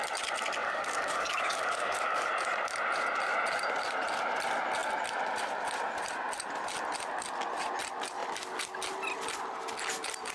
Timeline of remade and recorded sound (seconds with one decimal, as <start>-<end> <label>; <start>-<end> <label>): 0.0-0.6 recorded; 0.6-2.3 remade; 2.3-10.3 recorded